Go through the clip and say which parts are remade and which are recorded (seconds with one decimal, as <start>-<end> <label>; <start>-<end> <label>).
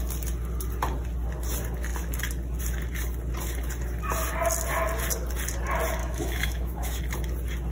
0.0-6.0 recorded; 6.0-7.0 remade; 7.0-7.7 recorded